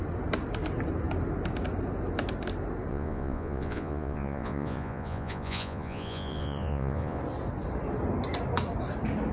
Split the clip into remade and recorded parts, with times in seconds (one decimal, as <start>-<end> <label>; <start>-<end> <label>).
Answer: 0.0-2.9 recorded; 2.9-7.2 remade; 7.2-9.3 recorded